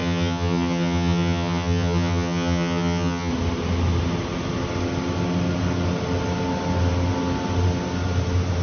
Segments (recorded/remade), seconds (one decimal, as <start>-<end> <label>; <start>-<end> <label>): 0.0-3.3 remade; 3.3-8.6 recorded

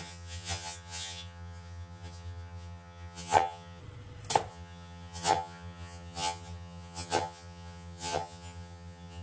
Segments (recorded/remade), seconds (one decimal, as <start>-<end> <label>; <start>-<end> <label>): 0.0-3.8 remade; 3.8-4.5 recorded; 4.5-9.2 remade

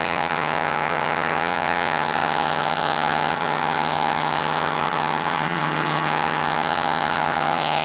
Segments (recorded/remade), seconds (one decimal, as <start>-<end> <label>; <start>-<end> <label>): 0.0-7.8 remade

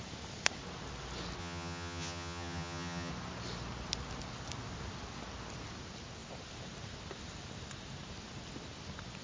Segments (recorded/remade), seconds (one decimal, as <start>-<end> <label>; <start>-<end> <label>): 0.0-1.4 recorded; 1.4-3.1 remade; 3.1-9.2 recorded

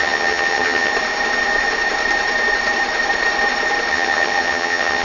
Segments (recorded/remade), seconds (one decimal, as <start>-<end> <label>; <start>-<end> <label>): 0.0-0.9 remade; 0.9-3.9 recorded; 3.9-5.0 remade

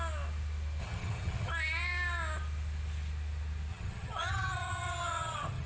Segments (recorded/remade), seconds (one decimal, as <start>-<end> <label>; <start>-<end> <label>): 0.0-0.8 recorded; 0.8-1.5 remade; 1.5-3.7 recorded; 3.7-5.7 remade